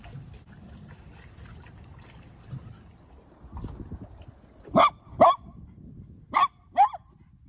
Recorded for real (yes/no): yes